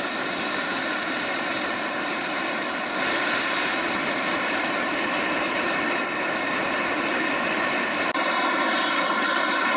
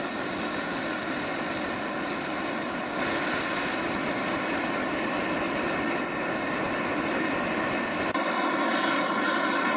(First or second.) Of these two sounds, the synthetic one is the first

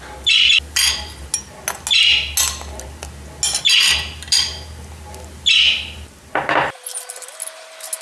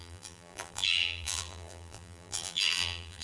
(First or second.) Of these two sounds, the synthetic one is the second